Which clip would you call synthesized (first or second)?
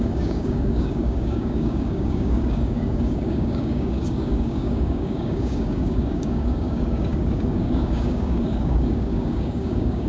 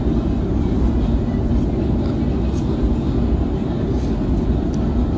first